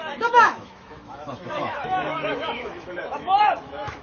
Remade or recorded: remade